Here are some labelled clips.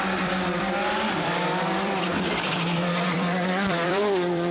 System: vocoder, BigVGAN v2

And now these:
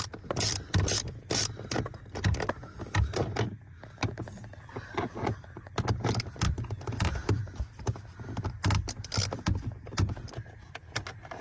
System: none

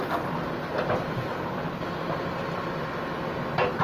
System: none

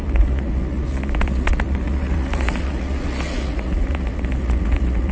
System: vocoder, Vocos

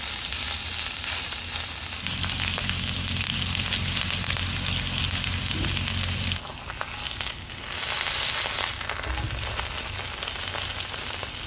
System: none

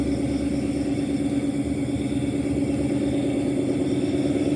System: none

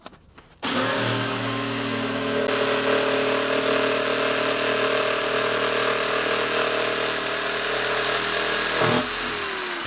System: none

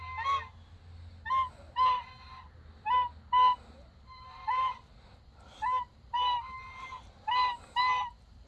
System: none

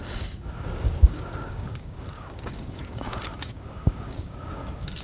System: codec, DAC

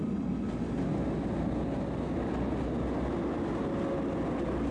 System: none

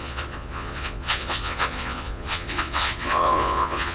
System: vocoder, Vocos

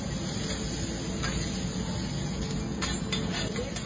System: none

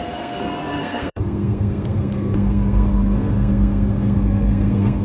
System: codec, SNAC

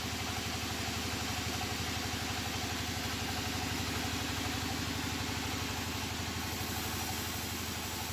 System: none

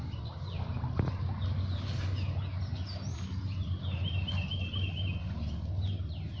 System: none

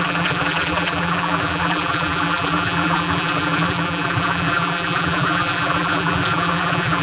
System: vocoder, BigVGAN v2